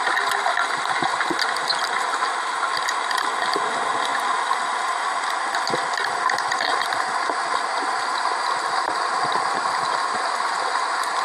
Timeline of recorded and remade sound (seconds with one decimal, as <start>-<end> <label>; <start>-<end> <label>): 0.0-11.2 recorded